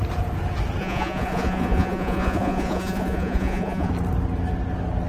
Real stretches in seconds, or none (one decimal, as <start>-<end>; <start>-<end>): 0.0-0.8; 3.9-5.1